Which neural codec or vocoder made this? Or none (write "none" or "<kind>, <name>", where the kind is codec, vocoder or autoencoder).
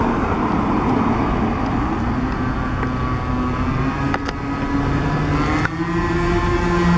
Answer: none